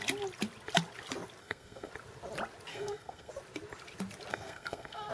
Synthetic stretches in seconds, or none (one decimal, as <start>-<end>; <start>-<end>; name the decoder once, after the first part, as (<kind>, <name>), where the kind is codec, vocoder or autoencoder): 1.4-1.9 (codec, SNAC); 2.7-3.3; 4.3-5.1